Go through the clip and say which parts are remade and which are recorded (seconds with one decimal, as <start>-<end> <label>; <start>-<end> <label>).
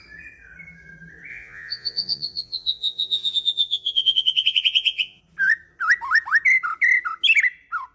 0.0-1.3 recorded; 1.3-5.2 remade; 5.2-7.9 recorded